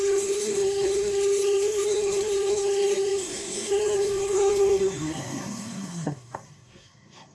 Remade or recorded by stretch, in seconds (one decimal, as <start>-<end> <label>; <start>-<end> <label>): 0.0-7.3 remade